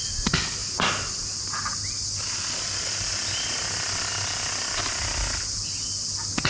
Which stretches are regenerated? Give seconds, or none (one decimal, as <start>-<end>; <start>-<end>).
none